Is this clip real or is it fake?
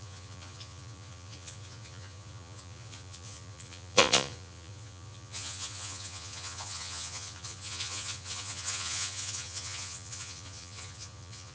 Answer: fake